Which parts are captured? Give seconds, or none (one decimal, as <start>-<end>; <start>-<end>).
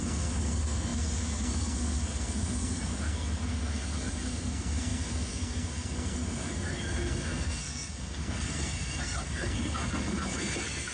none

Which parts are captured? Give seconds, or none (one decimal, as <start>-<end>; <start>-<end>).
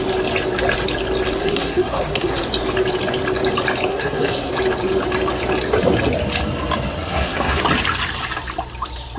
0.0-1.4; 2.5-3.9; 4.5-7.0; 7.6-9.2